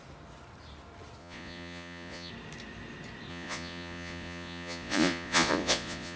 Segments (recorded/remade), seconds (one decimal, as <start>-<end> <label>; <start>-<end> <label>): 0.0-1.2 recorded; 1.2-2.3 remade; 2.3-3.3 recorded; 3.3-6.2 remade